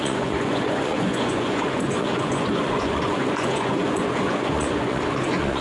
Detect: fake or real fake